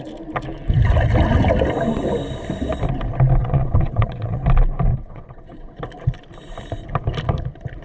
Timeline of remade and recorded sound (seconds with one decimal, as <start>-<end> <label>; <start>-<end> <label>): 0.0-3.4 recorded; 3.4-4.4 remade; 4.4-4.9 recorded; 4.9-5.8 remade; 5.8-7.8 recorded